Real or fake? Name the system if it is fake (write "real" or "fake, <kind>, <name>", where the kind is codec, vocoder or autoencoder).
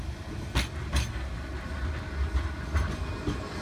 real